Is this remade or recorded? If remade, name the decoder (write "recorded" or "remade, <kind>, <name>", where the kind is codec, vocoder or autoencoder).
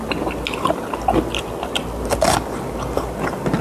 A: recorded